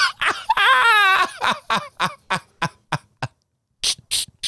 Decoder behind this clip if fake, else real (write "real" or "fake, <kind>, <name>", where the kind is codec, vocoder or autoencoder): real